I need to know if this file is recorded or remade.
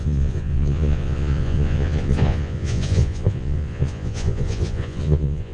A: remade